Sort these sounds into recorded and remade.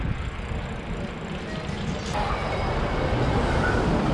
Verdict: recorded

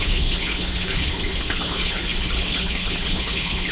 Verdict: remade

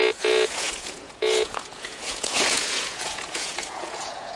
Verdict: remade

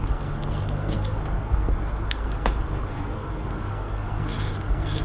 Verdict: remade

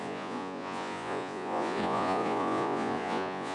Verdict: remade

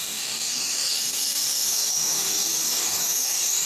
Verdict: remade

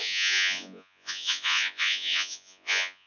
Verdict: remade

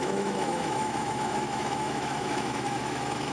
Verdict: remade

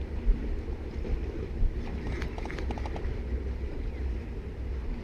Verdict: recorded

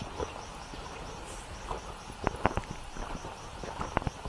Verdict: recorded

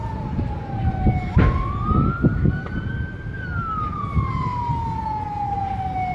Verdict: recorded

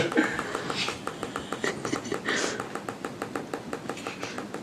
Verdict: recorded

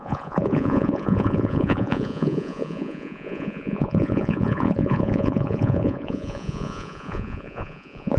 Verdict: remade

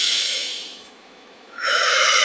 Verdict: remade